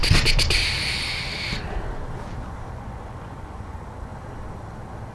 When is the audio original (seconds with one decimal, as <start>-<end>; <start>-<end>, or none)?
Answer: 0.0-2.7; 4.1-5.1